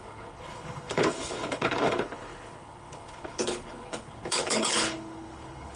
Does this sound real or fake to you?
fake